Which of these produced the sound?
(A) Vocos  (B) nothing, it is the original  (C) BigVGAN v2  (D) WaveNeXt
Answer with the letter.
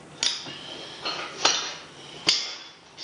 B